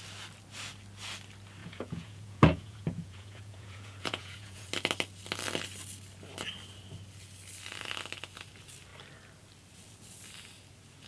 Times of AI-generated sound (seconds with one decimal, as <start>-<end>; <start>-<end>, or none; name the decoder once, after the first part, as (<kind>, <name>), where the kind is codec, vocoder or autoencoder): 1.6-4.7 (vocoder, Vocos)